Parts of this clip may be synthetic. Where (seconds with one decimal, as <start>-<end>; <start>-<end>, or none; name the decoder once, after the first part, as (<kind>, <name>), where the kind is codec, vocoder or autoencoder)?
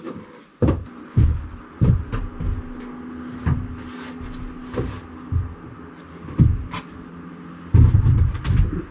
1.0-1.6 (codec, HILCodec)